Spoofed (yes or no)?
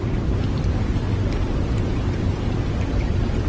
no